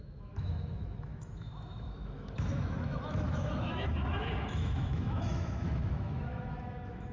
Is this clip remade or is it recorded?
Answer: remade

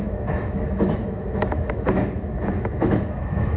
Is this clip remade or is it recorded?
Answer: remade